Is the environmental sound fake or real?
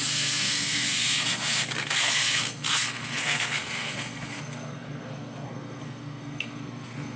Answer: fake